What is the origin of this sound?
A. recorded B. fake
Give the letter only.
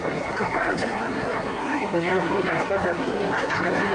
B